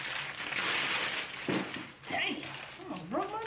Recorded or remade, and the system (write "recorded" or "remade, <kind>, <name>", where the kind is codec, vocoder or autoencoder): recorded